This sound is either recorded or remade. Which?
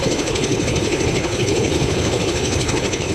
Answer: remade